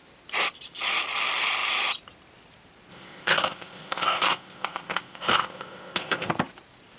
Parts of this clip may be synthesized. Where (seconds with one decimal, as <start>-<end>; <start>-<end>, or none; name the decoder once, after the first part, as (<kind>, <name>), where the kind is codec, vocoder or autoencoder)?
2.9-6.3 (codec, ZipCodec)